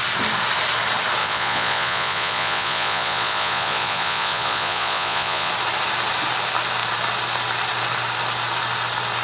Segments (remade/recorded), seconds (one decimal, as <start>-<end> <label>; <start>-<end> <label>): 0.0-1.2 recorded; 1.2-5.5 remade; 5.5-9.2 recorded